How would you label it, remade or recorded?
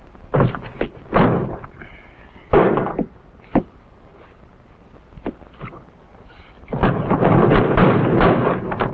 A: recorded